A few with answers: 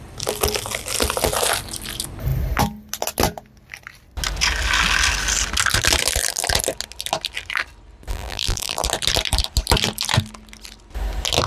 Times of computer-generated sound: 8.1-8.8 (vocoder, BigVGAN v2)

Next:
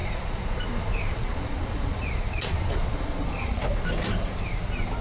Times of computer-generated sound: 0.0-0.6 (vocoder, Vocos); 1.1-3.6